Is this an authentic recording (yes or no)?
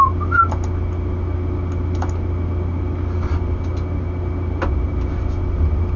yes